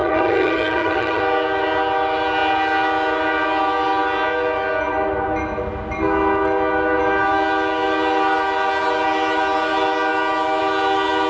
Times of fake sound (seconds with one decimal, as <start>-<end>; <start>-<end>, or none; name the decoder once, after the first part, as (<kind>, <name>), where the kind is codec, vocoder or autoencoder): 0.0-1.2 (vocoder, HiFi-GAN)